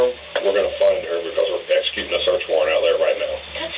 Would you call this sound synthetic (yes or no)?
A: no